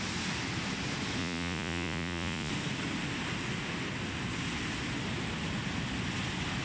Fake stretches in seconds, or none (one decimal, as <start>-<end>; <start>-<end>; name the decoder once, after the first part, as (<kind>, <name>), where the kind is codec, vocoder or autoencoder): 1.2-2.5 (vocoder, Vocos)